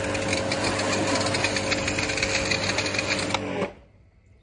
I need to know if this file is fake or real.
real